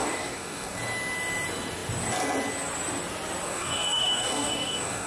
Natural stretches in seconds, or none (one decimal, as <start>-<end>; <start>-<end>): 0.8-3.5